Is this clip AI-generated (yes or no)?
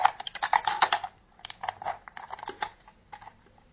no